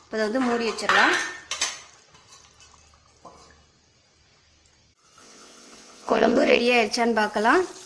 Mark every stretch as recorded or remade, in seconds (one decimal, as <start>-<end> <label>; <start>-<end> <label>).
0.0-5.2 recorded; 5.2-6.6 remade; 6.6-7.9 recorded